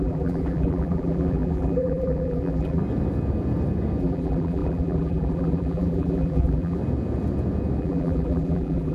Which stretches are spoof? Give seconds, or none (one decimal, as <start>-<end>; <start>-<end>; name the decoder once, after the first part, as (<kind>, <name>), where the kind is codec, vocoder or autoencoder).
0.0-2.8 (vocoder, BigVGAN v2); 4.0-6.8; 7.8-8.9